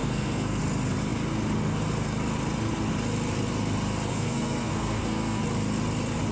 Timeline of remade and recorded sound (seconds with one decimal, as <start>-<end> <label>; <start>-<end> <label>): 0.0-0.6 remade; 0.6-4.1 recorded; 4.1-5.4 remade; 5.4-6.3 recorded